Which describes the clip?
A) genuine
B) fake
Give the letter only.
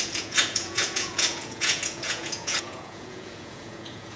B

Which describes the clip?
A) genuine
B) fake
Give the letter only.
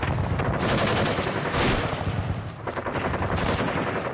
A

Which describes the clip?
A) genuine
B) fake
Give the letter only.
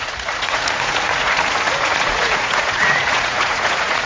B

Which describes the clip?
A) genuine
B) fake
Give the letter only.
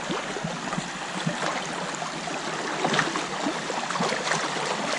A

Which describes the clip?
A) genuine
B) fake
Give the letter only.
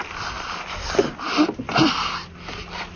A